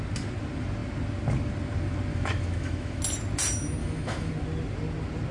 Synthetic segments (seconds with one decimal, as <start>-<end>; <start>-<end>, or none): 2.1-3.0; 3.8-4.3